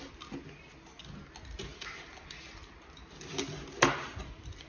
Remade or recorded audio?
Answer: recorded